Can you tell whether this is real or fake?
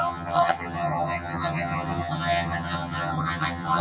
fake